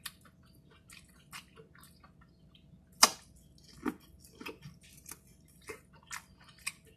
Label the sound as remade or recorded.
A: recorded